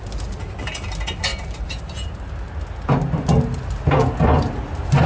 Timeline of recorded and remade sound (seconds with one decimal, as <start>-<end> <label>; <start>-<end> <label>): 0.0-1.3 recorded; 1.3-2.3 remade; 2.3-5.1 recorded